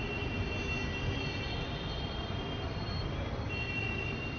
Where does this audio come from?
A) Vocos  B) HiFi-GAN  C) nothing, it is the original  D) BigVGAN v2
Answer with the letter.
C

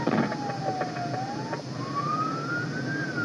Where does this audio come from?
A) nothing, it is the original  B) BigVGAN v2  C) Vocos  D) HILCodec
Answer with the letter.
A